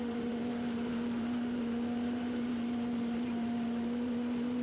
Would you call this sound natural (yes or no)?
no